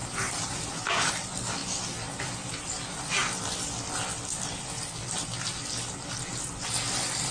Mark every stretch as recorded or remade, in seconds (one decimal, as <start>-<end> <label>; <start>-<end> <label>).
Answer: 0.0-1.1 remade; 1.1-7.3 recorded